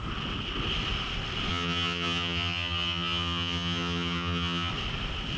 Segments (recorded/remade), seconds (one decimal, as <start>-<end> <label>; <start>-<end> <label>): 0.0-1.5 recorded; 1.5-4.7 remade; 4.7-5.4 recorded